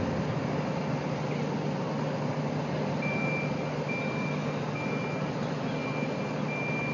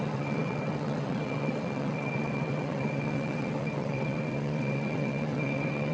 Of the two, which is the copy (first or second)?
second